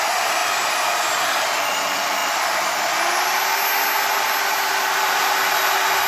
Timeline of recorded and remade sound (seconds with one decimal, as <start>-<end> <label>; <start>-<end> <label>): 0.0-6.1 recorded